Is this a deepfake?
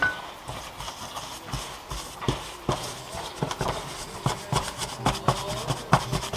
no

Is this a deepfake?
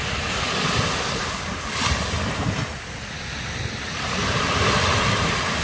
no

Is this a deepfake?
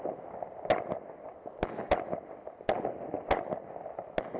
no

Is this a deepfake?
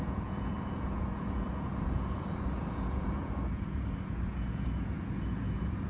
yes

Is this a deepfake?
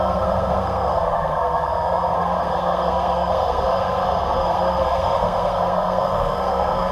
yes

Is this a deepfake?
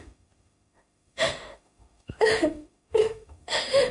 yes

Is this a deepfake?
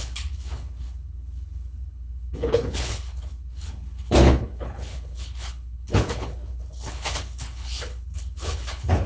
yes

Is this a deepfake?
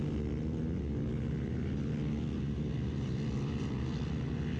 no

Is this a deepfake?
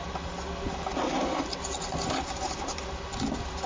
no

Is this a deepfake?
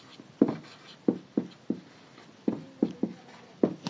no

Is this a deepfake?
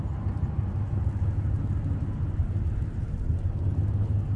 no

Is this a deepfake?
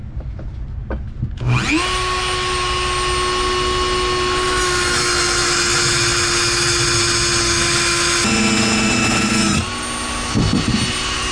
no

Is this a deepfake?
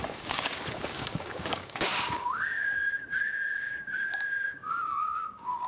yes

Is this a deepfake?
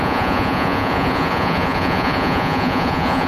yes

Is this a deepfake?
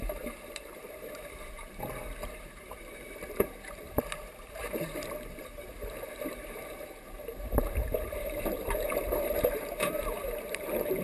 yes